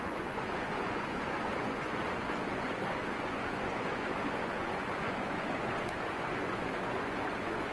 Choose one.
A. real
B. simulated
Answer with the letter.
B